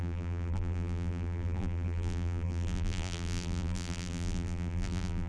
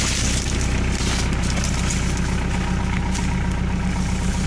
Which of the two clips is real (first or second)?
second